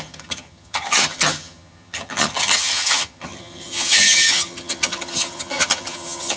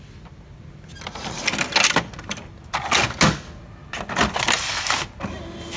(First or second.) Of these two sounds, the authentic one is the second